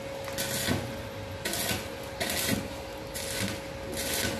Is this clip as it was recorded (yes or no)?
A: yes